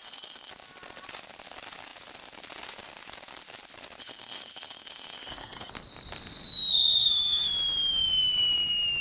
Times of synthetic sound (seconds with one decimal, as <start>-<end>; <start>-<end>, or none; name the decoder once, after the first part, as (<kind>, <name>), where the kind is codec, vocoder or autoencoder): 0.0-0.5 (codec, SNAC); 4.0-5.7; 6.7-7.5